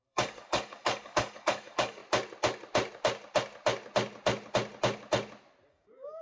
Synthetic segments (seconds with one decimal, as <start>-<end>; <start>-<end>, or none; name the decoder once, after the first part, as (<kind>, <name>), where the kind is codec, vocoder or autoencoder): 0.0-2.0 (codec, DAC); 5.7-6.2